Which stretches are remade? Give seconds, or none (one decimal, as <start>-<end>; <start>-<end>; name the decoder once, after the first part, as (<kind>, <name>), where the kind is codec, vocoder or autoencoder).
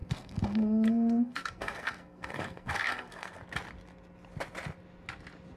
0.0-3.4 (codec, SNAC)